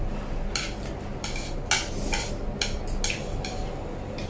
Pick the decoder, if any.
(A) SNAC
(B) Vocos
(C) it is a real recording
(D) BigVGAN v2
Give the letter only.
C